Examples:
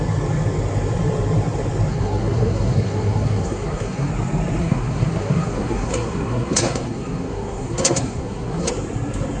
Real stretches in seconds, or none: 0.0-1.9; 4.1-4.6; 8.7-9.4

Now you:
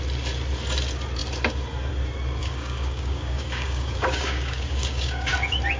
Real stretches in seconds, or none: 0.0-2.4; 5.3-5.8

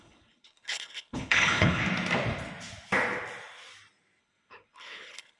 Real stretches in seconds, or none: 1.8-4.2